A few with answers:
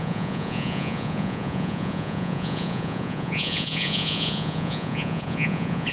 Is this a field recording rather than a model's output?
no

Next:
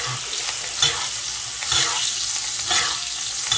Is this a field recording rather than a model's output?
yes